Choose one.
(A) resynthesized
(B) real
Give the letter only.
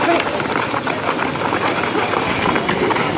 B